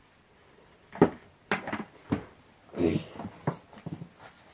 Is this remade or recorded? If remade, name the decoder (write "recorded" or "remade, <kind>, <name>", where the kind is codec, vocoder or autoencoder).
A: recorded